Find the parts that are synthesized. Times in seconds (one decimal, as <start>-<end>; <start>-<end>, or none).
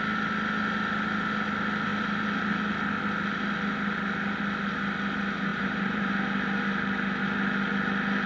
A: 5.5-6.1